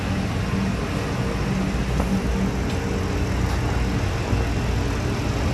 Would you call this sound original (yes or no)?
yes